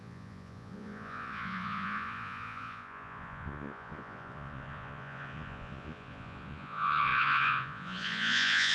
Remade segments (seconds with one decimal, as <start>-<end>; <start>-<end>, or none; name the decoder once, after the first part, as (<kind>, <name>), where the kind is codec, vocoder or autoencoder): 0.0-8.7 (vocoder, Vocos)